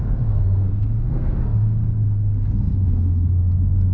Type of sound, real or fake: fake